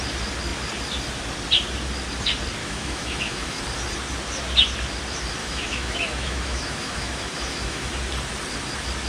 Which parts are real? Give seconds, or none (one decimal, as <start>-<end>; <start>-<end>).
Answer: 0.0-2.6; 3.6-5.4; 7.9-9.1